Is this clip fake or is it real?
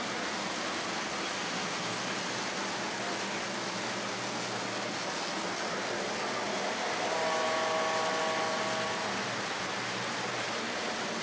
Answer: real